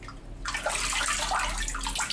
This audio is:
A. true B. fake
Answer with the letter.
A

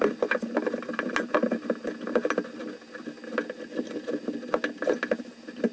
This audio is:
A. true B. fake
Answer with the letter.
A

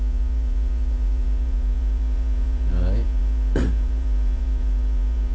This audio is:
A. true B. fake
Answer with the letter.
B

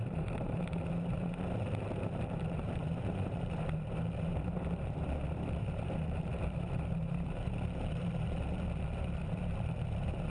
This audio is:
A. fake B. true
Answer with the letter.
A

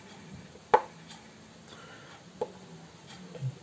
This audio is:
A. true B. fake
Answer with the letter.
A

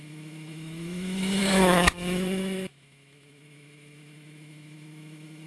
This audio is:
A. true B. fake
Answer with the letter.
B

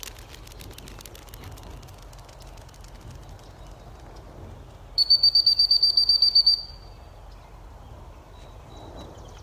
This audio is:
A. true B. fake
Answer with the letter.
A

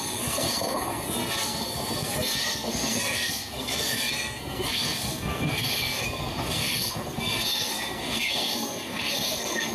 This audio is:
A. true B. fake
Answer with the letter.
B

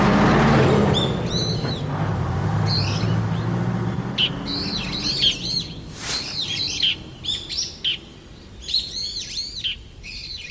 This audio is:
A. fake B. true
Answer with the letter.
B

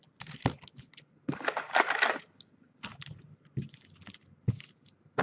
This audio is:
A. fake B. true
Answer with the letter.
B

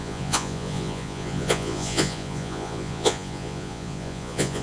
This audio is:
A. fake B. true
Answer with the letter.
A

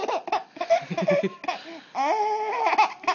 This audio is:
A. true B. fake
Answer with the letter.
A